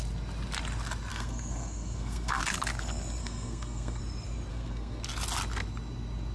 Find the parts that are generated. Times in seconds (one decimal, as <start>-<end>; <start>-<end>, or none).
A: 1.1-2.4; 3.2-4.0; 4.5-5.0